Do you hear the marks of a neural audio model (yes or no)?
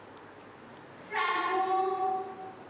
no